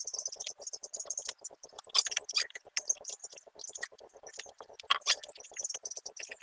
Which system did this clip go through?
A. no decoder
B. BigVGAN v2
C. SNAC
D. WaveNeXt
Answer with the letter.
A